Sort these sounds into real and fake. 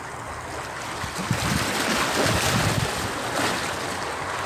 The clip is real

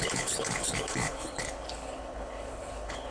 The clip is fake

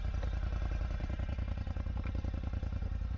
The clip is fake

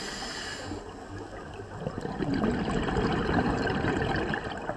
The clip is real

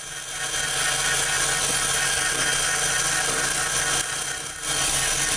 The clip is real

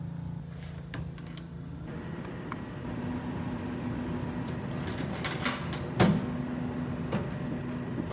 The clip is real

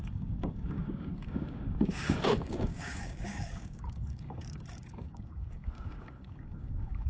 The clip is fake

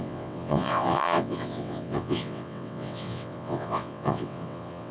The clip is fake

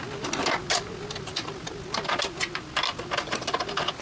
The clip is real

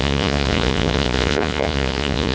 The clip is fake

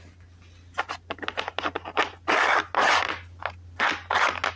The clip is real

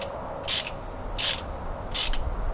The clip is real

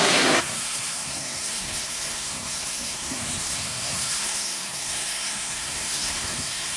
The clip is fake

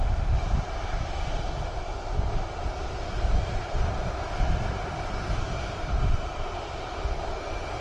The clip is real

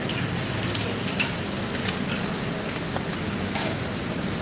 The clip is real